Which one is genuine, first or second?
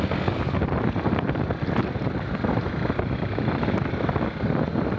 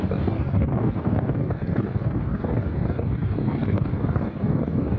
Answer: first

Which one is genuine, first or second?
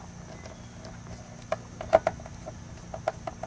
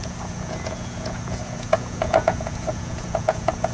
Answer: first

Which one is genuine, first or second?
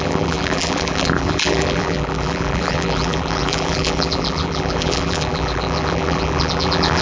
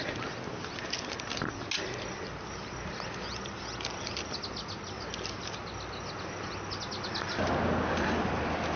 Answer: second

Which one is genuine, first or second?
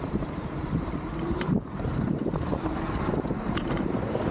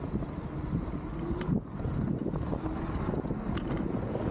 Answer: second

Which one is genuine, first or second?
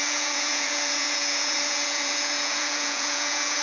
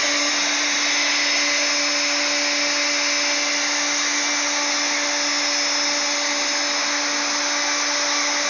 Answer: second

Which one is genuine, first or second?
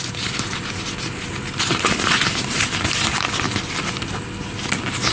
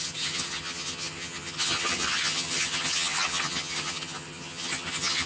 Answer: first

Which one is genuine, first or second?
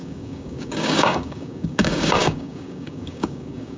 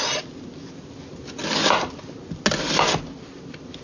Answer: second